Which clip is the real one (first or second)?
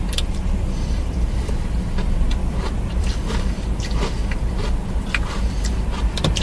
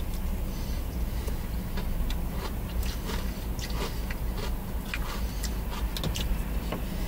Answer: second